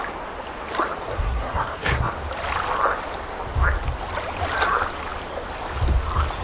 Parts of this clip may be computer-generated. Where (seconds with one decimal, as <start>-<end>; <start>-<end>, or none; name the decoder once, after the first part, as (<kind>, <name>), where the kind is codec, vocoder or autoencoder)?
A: 1.1-2.1 (codec, SNAC)